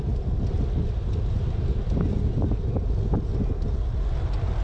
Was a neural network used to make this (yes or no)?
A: no